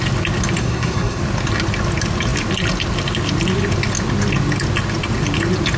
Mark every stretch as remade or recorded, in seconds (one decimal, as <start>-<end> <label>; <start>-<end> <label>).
0.0-0.6 recorded; 0.6-1.2 remade; 1.2-5.8 recorded